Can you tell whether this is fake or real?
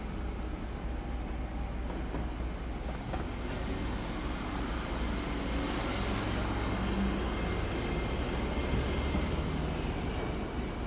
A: real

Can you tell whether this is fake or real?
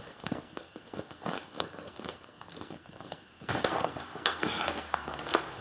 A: fake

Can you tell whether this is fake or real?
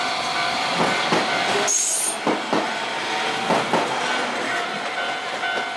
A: real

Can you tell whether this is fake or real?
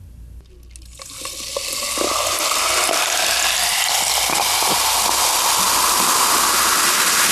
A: real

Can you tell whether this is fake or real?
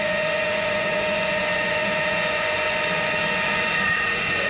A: fake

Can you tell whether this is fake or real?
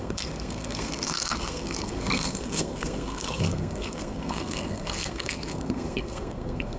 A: fake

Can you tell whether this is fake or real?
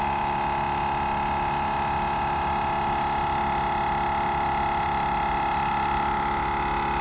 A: real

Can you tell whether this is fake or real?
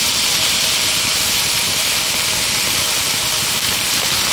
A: fake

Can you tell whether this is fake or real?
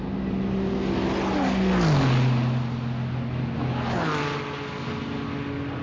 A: real